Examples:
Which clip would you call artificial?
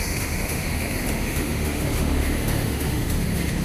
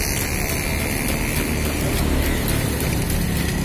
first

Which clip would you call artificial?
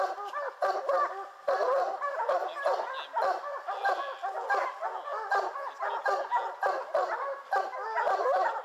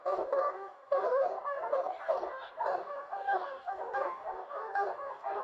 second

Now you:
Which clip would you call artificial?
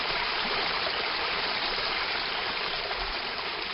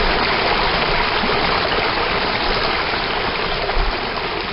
first